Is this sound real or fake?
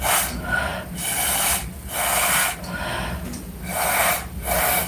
real